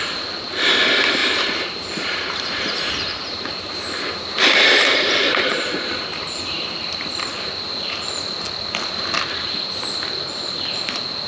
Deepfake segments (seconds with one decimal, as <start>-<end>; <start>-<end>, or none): 1.2-6.4